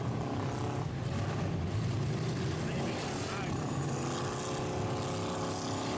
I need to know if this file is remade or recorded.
recorded